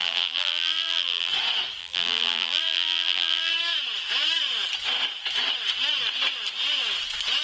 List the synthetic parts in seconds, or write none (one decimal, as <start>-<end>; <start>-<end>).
0.0-1.3; 1.8-3.5